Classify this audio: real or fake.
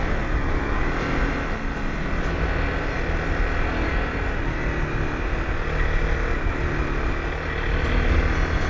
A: real